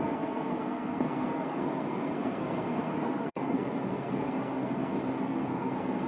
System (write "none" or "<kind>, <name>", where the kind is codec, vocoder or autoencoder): codec, SNAC